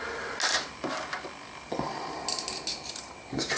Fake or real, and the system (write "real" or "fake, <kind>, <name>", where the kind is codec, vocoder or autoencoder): real